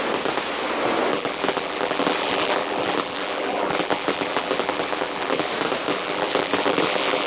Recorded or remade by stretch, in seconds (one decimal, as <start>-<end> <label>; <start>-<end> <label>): 0.0-1.1 recorded; 1.1-5.5 remade; 5.5-5.9 recorded; 5.9-7.3 remade